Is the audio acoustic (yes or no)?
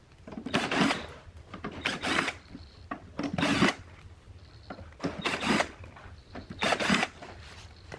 no